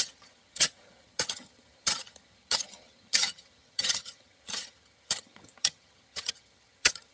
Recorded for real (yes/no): no